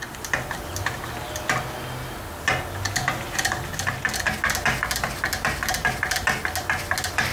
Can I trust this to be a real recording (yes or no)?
yes